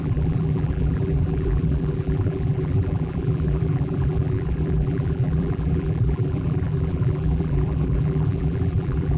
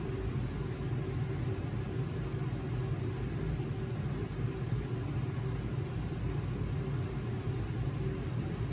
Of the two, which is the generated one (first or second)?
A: first